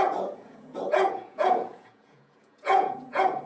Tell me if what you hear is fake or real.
fake